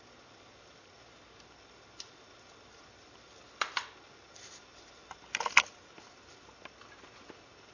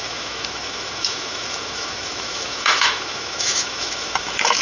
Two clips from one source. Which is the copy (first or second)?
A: second